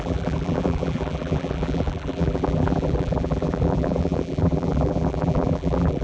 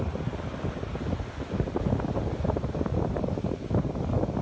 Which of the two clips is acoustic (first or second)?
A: second